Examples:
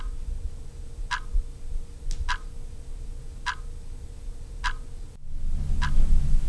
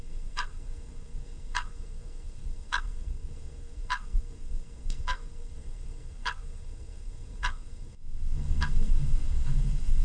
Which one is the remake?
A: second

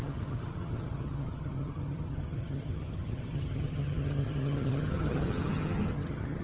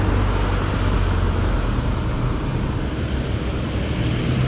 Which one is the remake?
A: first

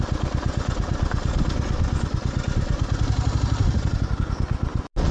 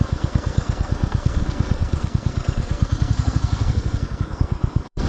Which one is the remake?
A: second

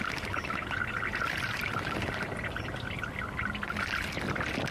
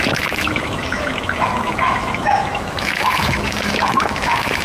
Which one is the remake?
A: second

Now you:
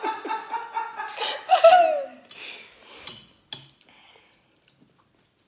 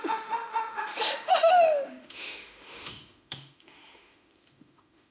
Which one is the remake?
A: second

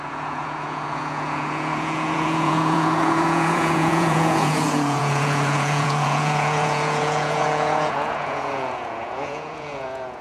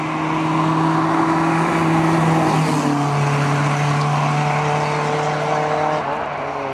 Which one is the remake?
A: first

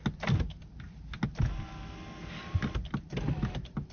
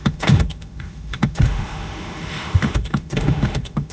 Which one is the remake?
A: second